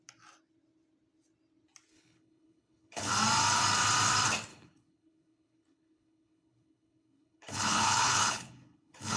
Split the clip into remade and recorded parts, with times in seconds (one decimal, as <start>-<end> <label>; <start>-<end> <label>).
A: 0.0-1.9 recorded; 1.9-3.1 remade; 3.1-4.5 recorded; 4.5-9.2 remade

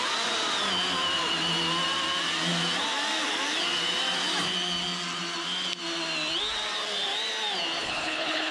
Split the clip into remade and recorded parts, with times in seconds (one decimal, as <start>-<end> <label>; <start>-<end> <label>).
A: 0.0-7.8 recorded; 7.8-8.5 remade

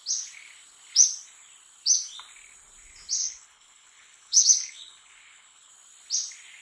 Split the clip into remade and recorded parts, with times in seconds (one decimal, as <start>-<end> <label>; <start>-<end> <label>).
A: 0.0-3.2 recorded; 3.2-5.7 remade; 5.7-6.6 recorded

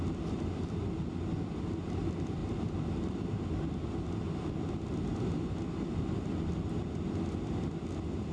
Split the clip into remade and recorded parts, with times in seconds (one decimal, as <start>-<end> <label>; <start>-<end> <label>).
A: 0.0-8.3 recorded

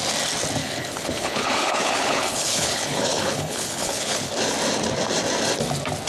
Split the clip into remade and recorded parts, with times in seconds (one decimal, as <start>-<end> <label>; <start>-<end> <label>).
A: 0.0-0.6 recorded; 0.6-4.3 remade; 4.3-6.1 recorded

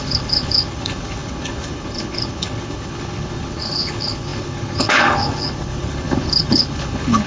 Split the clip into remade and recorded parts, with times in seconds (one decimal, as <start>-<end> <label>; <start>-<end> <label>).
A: 0.0-7.3 remade

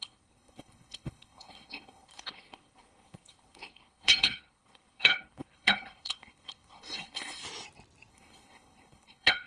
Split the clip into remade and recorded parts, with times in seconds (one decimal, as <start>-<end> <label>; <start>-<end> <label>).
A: 0.0-7.4 remade; 7.4-8.1 recorded; 8.1-9.5 remade

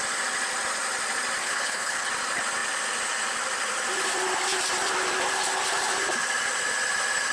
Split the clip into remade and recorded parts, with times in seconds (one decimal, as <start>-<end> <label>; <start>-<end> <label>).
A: 0.0-1.4 recorded; 1.4-2.1 remade; 2.1-7.3 recorded